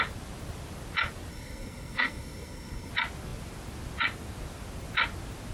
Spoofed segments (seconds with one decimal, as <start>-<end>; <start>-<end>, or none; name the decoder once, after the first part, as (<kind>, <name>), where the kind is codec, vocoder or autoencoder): 1.3-2.9 (codec, SNAC)